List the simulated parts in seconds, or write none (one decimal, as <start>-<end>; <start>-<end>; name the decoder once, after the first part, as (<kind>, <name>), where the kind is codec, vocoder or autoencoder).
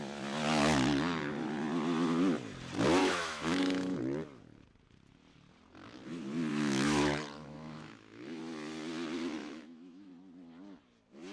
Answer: 3.0-4.0 (autoencoder, DAC-VAE); 6.5-8.4; 9.4-10.1